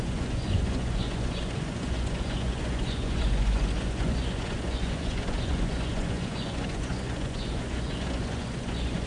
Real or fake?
fake